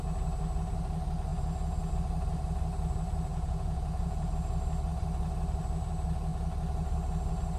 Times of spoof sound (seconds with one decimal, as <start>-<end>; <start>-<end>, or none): 3.3-4.3